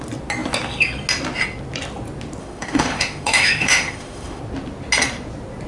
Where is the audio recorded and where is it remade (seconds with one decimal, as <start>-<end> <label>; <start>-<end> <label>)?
0.0-2.4 recorded; 2.4-4.4 remade; 4.4-5.7 recorded